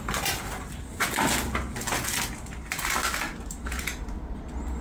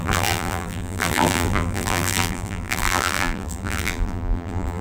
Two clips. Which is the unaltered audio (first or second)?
first